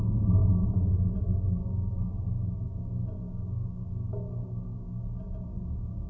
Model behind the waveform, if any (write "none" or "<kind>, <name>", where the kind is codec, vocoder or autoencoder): none